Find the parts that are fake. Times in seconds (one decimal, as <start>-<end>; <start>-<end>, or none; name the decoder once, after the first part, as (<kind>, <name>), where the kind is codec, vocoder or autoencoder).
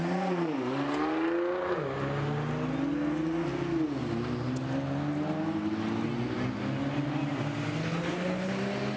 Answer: 7.8-8.5 (codec, HILCodec)